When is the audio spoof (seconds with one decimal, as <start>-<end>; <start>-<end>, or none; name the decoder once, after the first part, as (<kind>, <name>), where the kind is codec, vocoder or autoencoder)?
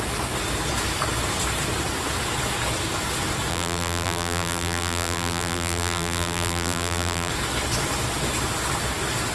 3.5-7.3 (vocoder, BigVGAN v2)